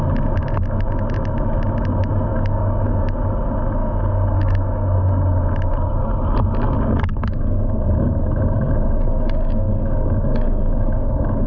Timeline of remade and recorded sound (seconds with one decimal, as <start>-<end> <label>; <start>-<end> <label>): 0.0-2.3 recorded; 2.3-3.0 remade; 3.0-3.8 recorded; 3.8-5.2 remade; 5.2-7.1 recorded; 7.1-11.5 remade

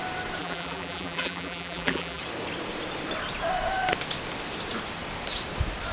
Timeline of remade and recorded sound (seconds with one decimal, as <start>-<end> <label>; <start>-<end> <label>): 0.0-0.4 recorded; 0.4-2.2 remade; 2.2-5.9 recorded

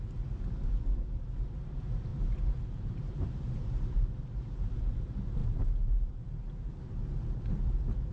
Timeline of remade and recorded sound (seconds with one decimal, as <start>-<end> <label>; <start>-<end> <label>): 0.0-2.1 recorded; 2.1-5.0 remade; 5.0-5.4 recorded; 5.4-7.1 remade; 7.1-8.1 recorded

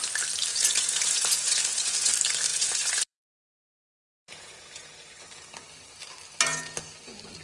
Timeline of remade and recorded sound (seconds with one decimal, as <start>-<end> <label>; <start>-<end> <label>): 0.0-0.5 recorded; 0.5-2.1 remade; 2.1-2.5 recorded; 2.5-4.9 remade; 4.9-7.4 recorded

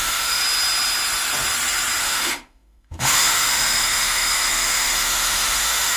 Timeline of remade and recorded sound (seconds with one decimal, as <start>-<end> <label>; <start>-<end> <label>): 0.0-0.4 remade; 0.4-2.0 recorded; 2.0-6.0 remade

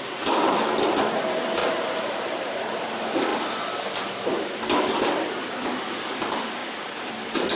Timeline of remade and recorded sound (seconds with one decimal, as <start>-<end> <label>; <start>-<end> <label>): 0.0-1.6 recorded; 1.6-2.8 remade; 2.8-6.6 recorded; 6.6-7.1 remade; 7.1-7.6 recorded

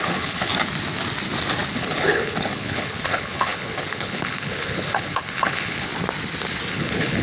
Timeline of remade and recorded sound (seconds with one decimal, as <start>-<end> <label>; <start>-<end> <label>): 0.0-0.5 remade; 0.5-1.7 recorded; 1.7-5.9 remade; 5.9-6.7 recorded; 6.7-7.2 remade

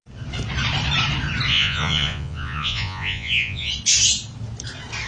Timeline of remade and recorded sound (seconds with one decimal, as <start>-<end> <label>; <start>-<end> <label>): 0.0-1.5 recorded; 1.5-3.7 remade; 3.7-5.1 recorded